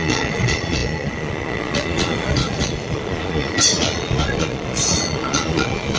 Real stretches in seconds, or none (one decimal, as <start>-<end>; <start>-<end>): none